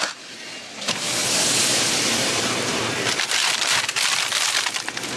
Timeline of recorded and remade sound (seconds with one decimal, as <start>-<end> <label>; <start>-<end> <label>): 0.0-5.2 recorded